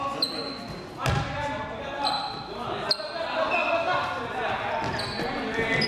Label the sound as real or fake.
real